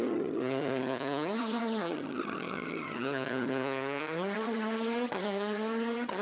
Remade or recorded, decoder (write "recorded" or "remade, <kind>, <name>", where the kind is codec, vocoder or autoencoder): remade, vocoder, HiFi-GAN